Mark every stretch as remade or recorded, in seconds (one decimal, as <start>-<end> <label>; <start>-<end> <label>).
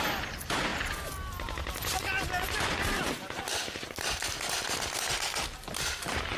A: 0.0-6.4 recorded